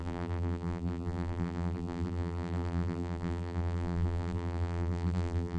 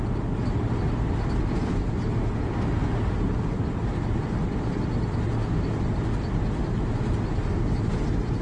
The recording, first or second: second